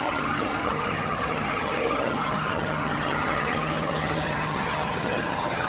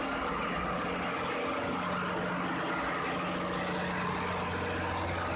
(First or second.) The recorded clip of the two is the second